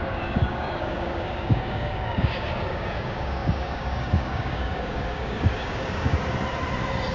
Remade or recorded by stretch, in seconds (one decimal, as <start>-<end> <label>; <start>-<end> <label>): 0.0-6.2 remade; 6.2-7.1 recorded